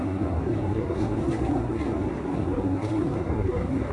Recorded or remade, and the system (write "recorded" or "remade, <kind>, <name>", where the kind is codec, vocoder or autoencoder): remade, codec, SNAC